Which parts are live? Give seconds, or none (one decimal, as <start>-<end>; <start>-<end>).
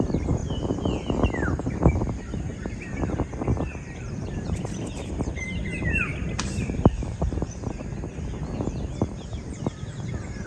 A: 0.0-3.7; 7.8-9.3